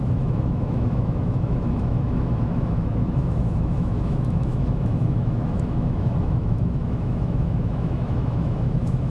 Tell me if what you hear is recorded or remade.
remade